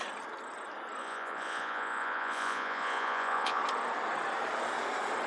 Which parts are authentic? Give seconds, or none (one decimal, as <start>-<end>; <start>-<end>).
0.0-1.0; 3.6-5.3